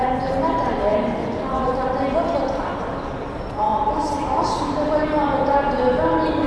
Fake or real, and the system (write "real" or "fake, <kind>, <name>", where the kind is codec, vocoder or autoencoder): real